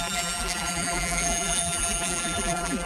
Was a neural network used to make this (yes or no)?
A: yes